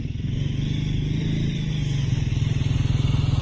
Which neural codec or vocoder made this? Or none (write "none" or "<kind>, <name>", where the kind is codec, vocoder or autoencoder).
none